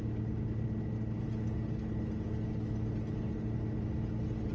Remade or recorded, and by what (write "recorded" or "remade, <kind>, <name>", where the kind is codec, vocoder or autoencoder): recorded